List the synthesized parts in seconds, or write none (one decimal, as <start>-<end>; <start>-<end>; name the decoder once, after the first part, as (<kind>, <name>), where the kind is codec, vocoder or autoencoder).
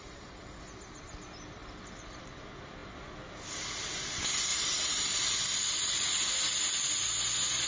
1.6-2.2 (vocoder, BigVGAN v2); 4.5-5.2